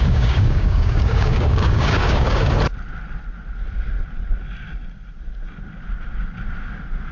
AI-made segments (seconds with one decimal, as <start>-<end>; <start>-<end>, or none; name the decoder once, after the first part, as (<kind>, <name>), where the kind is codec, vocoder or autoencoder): 0.0-2.4 (codec, DAC)